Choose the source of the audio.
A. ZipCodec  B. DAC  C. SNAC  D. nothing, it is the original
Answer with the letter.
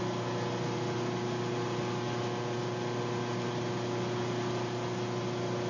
D